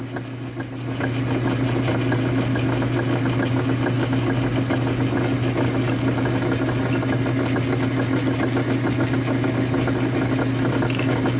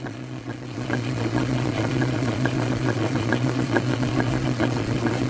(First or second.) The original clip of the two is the first